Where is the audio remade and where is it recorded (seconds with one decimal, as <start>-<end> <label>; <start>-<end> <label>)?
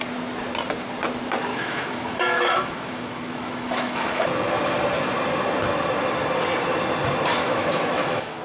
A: 0.0-1.5 recorded; 1.5-4.3 remade; 4.3-7.4 recorded; 7.4-8.4 remade